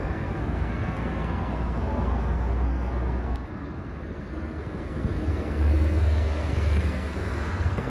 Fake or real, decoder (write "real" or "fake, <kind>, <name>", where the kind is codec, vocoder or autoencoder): fake, codec, SNAC